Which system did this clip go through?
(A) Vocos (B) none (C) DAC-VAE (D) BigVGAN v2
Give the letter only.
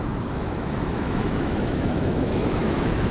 C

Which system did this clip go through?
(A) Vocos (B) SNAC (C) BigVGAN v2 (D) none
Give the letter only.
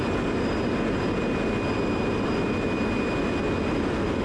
D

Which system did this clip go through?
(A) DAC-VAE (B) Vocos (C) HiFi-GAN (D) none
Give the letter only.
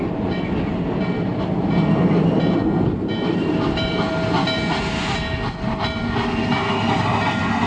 D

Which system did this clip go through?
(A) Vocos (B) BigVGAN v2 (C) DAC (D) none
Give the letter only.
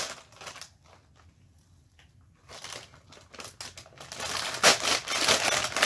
D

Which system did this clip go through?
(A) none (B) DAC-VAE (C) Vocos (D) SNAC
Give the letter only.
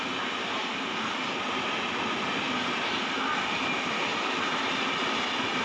A